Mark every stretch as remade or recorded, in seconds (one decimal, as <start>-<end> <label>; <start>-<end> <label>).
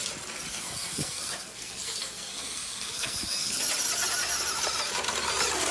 0.0-0.5 recorded; 0.5-3.6 remade; 3.6-5.7 recorded